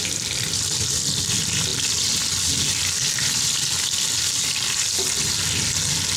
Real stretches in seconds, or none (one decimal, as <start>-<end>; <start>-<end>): 0.0-6.2